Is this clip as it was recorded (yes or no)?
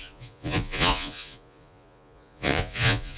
no